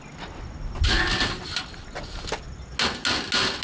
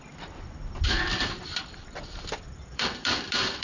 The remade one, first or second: second